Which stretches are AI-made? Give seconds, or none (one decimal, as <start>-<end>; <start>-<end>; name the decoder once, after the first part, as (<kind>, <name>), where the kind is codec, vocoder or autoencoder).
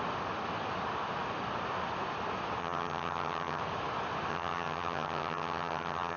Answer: 2.6-3.6 (vocoder, HiFi-GAN); 4.3-6.2